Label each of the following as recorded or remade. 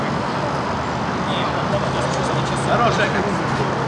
recorded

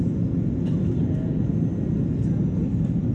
recorded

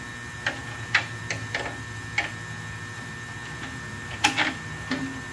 recorded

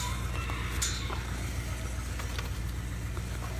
recorded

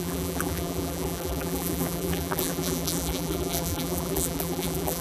remade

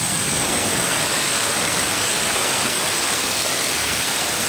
remade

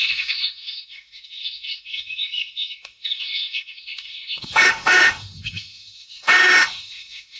remade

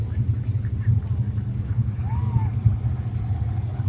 recorded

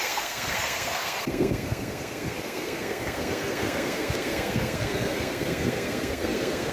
remade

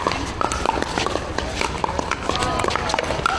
recorded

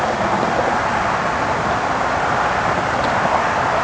recorded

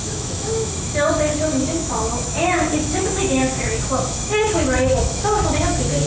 remade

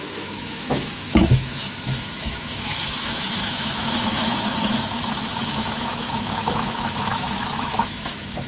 remade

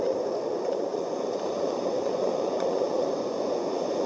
remade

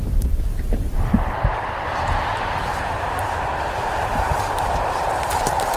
remade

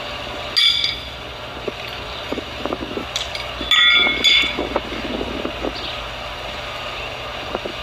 recorded